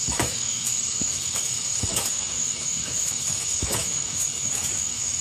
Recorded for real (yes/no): no